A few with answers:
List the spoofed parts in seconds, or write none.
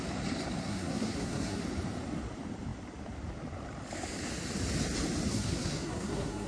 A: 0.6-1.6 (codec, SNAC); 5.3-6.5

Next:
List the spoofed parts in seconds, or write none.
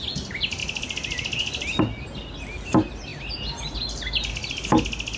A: none